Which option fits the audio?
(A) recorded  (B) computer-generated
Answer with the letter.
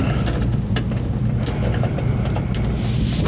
A